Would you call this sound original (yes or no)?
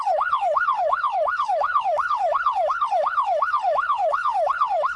no